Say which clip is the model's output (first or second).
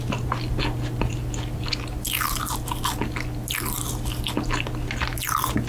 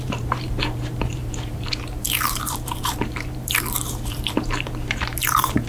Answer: second